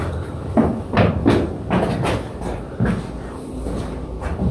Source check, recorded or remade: remade